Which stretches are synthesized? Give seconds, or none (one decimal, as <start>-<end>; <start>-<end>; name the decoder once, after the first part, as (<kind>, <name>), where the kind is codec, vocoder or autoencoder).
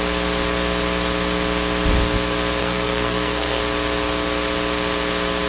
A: 2.6-3.6 (codec, SNAC)